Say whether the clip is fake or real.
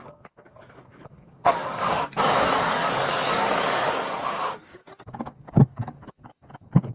fake